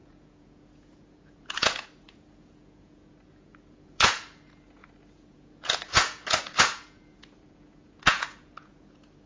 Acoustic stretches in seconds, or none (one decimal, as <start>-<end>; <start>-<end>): none